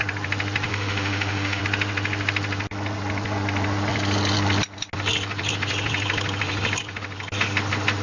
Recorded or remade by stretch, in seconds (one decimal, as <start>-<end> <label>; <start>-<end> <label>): 0.0-0.7 recorded; 0.7-1.6 remade; 1.6-8.0 recorded